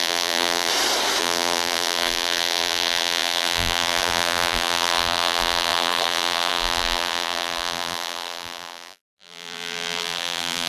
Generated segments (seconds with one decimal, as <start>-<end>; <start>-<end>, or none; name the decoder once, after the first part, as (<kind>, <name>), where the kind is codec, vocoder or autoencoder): 0.0-0.7 (vocoder, BigVGAN v2); 1.2-10.7